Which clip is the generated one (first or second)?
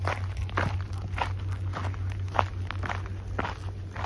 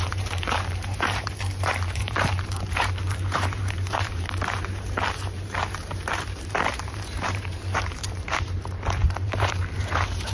second